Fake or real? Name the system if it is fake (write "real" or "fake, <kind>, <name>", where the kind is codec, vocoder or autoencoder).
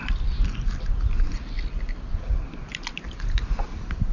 real